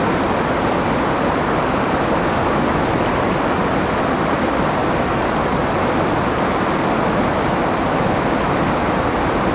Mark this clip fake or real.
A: real